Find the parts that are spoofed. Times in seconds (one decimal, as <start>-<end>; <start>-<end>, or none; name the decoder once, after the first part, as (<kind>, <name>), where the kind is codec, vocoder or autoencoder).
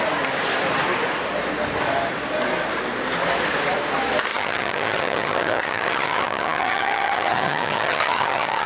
4.3-8.7 (vocoder, HiFi-GAN)